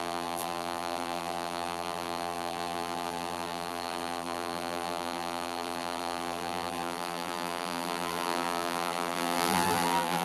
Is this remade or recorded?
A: remade